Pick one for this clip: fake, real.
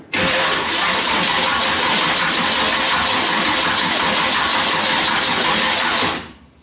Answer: real